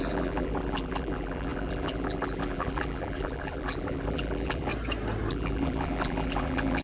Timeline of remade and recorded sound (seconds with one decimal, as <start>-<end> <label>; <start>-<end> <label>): 0.0-4.7 remade; 4.7-5.3 recorded; 5.3-6.8 remade